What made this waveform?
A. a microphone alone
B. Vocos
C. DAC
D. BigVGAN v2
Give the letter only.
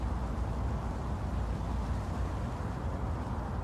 A